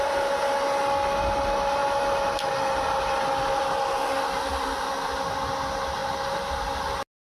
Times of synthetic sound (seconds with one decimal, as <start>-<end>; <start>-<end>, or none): none